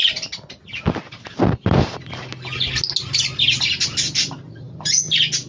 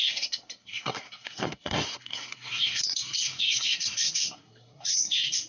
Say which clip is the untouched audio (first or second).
first